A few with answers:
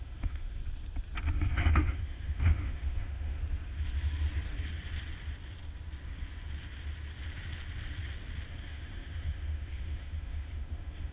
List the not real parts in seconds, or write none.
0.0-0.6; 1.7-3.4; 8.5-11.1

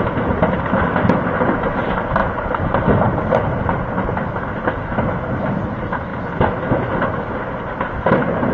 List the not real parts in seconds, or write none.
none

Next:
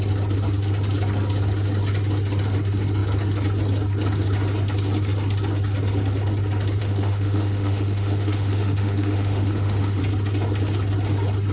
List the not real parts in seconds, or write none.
6.8-10.0